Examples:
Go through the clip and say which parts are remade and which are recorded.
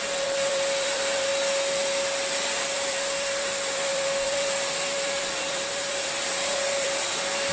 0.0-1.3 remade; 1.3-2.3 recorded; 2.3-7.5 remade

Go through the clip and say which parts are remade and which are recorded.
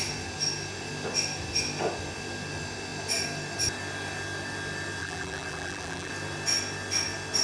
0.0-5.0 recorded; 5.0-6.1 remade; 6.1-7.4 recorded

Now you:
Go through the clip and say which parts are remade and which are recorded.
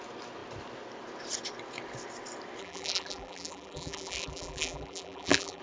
0.0-2.6 recorded; 2.6-5.6 remade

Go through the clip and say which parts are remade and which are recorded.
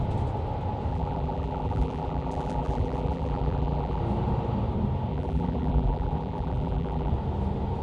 0.0-0.9 recorded; 0.9-4.0 remade; 4.0-5.1 recorded; 5.1-7.1 remade; 7.1-7.8 recorded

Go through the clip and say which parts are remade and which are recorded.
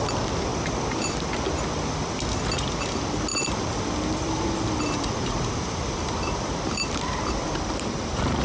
0.0-3.3 recorded; 3.3-8.4 remade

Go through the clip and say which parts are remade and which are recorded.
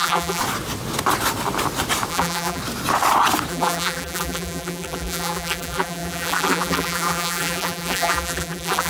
0.0-0.4 remade; 0.4-2.1 recorded; 2.1-2.6 remade; 2.6-3.5 recorded; 3.5-8.9 remade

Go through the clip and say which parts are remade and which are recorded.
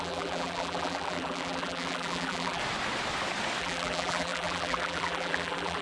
0.0-2.6 remade; 2.6-3.6 recorded; 3.6-5.8 remade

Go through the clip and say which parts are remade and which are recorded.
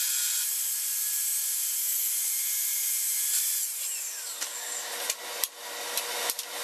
0.0-2.7 recorded; 2.7-5.1 remade; 5.1-6.6 recorded